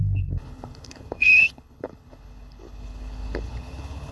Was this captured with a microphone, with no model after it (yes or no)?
no